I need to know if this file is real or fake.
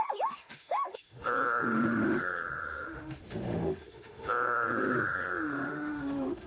fake